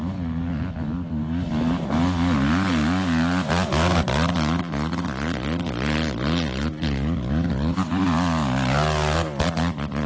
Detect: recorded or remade recorded